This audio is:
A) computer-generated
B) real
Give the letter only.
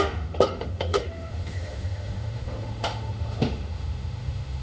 A